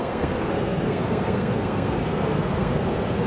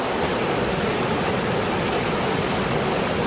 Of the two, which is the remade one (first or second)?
first